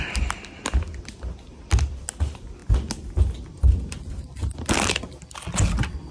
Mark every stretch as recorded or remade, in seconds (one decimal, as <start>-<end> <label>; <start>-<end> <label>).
0.0-6.1 recorded